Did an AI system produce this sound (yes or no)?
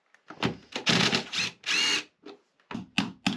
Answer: no